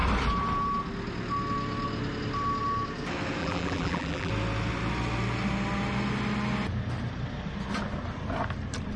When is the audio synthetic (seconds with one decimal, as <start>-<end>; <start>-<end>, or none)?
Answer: 3.4-4.3